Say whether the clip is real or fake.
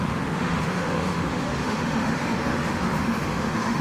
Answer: fake